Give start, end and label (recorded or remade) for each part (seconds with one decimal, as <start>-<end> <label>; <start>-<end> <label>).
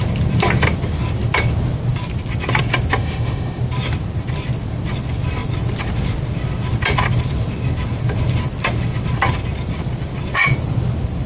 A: 0.0-3.0 recorded; 3.0-3.6 remade; 3.6-11.3 recorded